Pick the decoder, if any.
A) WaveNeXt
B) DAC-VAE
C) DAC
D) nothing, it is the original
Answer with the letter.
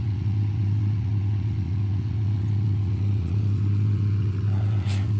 A